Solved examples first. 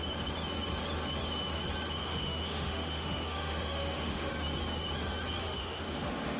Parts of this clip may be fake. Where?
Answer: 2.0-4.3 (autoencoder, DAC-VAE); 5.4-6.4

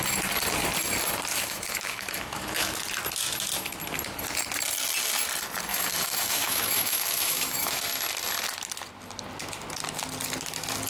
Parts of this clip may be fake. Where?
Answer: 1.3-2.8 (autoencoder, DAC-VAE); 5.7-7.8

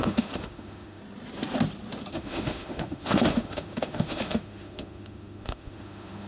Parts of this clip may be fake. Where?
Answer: 0.0-1.0 (autoencoder, DAC-VAE); 2.1-6.3

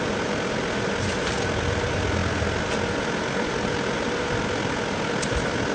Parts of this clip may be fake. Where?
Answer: none

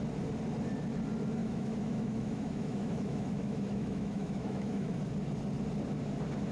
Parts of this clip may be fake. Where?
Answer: 1.4-5.0 (autoencoder, DAC-VAE)

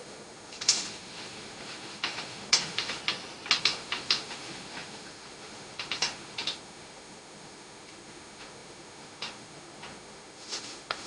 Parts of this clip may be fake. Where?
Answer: 0.0-3.0 (autoencoder, DAC-VAE); 3.6-11.1

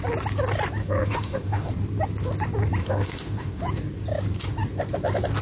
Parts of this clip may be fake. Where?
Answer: 0.8-1.7 (autoencoder, DAC-VAE); 2.8-3.6